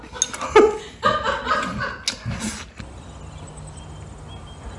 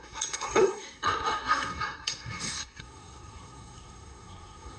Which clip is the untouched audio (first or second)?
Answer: first